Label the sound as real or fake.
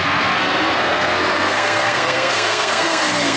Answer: fake